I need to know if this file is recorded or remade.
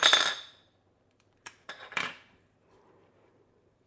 remade